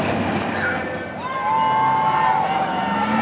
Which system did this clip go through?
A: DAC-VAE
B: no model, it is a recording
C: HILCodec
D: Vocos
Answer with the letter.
B